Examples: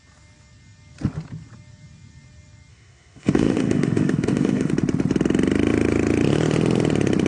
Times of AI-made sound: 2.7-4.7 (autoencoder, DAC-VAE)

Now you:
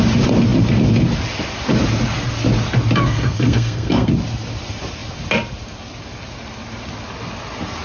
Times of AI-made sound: 3.0-4.1 (codec, SNAC)